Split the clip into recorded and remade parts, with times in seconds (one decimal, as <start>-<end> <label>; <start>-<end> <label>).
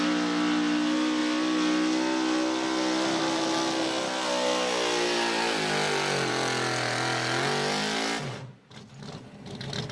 0.0-9.9 recorded